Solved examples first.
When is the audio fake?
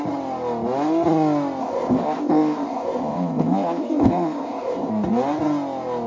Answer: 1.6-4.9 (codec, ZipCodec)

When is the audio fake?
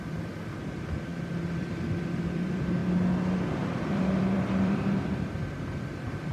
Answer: 0.0-2.8 (vocoder, BigVGAN v2); 3.4-6.3